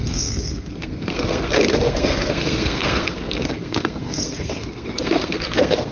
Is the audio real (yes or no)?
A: no